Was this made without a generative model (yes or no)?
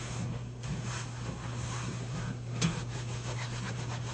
no